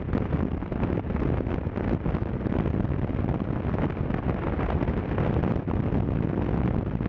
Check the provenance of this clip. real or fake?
real